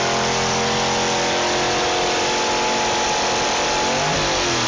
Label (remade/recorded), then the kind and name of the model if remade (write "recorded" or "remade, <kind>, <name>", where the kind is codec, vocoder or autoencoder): remade, vocoder, BigVGAN v2